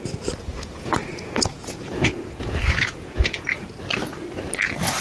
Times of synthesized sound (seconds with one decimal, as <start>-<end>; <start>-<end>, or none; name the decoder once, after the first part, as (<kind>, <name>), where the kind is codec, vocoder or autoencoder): 0.5-3.4 (vocoder, Vocos)